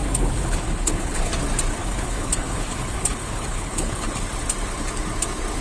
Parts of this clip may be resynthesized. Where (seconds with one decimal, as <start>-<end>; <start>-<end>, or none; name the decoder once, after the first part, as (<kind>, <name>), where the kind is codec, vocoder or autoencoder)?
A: 0.0-1.3 (codec, HILCodec); 1.8-4.2